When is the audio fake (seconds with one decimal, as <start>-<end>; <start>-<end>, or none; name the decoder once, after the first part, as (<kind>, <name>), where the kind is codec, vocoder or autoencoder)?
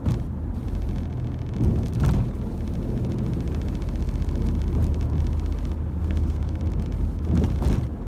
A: 6.0-6.6 (codec, SNAC)